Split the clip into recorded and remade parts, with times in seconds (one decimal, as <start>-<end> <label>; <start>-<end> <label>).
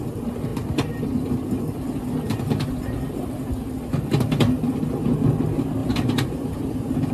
0.0-5.8 recorded; 5.8-7.1 remade